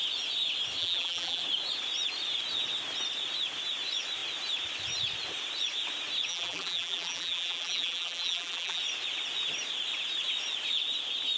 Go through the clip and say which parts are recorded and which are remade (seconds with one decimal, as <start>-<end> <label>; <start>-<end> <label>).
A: 0.0-0.8 recorded; 0.8-1.4 remade; 1.4-6.3 recorded; 6.3-8.8 remade; 8.8-11.4 recorded